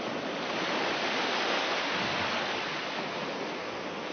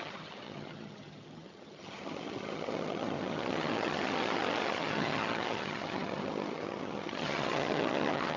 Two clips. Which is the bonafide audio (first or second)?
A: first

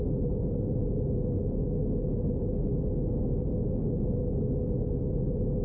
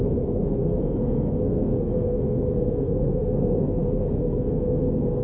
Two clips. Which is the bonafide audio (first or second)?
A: first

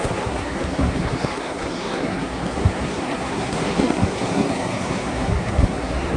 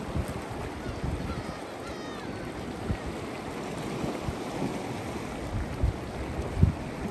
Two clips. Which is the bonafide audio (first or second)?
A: second